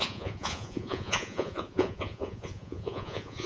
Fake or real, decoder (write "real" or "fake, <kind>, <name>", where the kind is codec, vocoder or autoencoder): fake, vocoder, Vocos